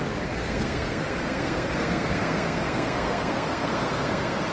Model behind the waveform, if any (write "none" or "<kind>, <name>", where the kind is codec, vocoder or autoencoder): codec, SNAC